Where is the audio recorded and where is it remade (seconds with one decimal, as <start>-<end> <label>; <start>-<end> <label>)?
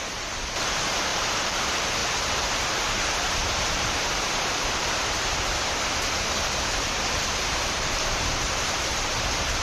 0.0-9.6 remade